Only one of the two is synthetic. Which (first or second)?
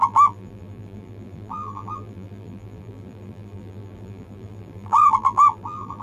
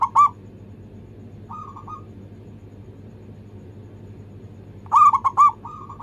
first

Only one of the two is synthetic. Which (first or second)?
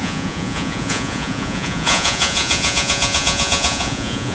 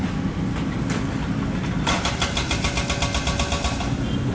first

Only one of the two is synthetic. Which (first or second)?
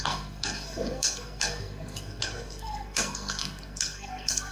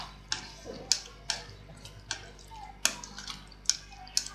first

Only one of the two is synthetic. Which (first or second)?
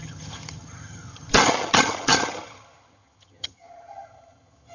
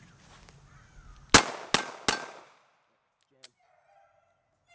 first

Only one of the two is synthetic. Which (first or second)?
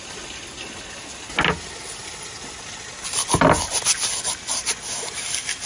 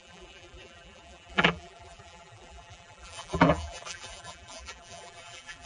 second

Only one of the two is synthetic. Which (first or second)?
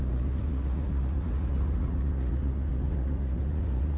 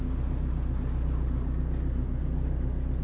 first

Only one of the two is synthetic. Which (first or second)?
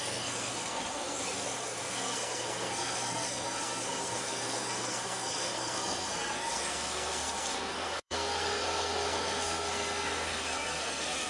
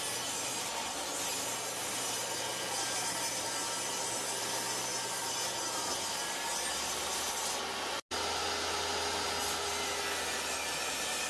first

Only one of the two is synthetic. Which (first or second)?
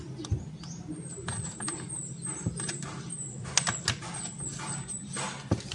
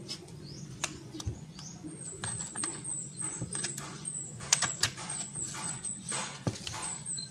second